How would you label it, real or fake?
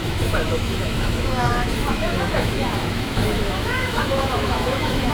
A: fake